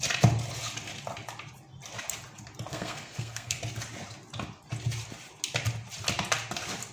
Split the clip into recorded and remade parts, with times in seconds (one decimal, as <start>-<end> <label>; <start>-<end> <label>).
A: 0.0-2.7 recorded; 2.7-3.6 remade; 3.6-6.9 recorded